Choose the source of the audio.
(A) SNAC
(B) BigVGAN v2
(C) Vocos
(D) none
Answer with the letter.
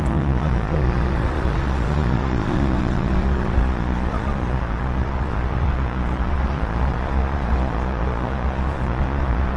C